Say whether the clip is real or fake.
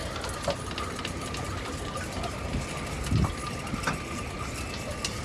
real